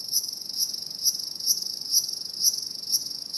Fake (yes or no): yes